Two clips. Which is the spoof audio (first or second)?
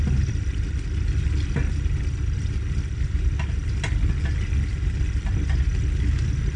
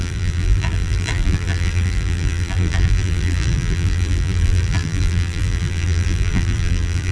second